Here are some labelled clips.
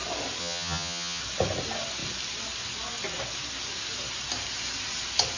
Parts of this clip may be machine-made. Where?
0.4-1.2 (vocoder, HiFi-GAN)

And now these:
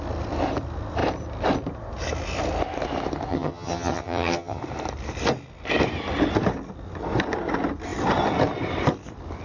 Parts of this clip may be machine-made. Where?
3.3-4.6 (vocoder, HiFi-GAN)

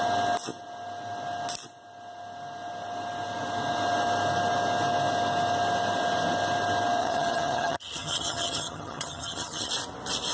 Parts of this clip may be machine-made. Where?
7.0-9.7 (vocoder, HiFi-GAN)

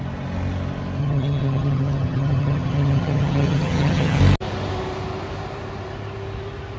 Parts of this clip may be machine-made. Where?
1.0-4.2 (vocoder, HiFi-GAN)

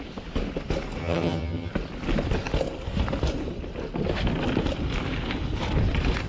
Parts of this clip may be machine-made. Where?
1.0-1.7 (vocoder, HiFi-GAN)